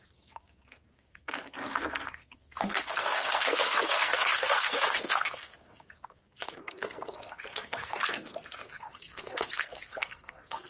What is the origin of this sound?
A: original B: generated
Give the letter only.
B